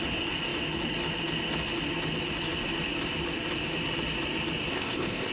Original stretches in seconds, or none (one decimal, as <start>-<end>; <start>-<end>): 0.0-4.7